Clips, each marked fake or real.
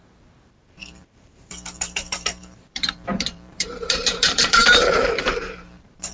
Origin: fake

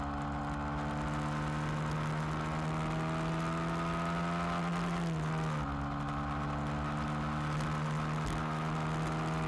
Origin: real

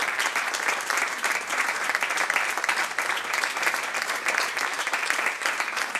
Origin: fake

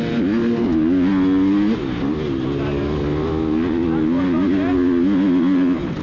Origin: real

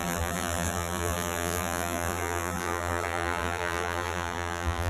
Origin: fake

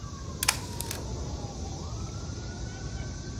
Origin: real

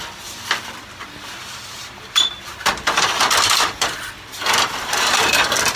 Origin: fake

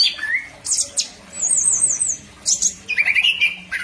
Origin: real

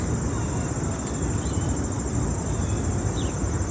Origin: real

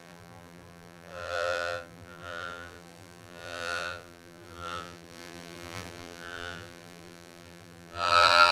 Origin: fake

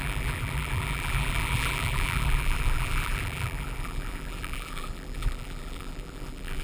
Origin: fake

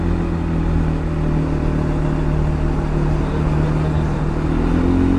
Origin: real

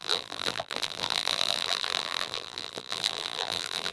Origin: fake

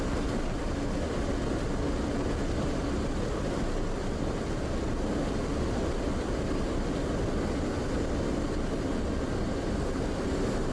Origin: real